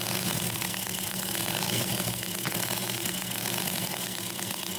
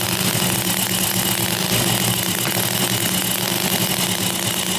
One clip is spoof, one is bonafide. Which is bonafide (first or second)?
second